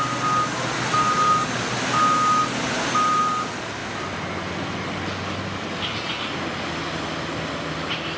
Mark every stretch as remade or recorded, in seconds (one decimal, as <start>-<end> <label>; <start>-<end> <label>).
0.0-8.2 recorded